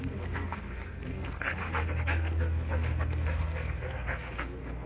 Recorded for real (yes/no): no